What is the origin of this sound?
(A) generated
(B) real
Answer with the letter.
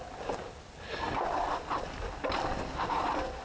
B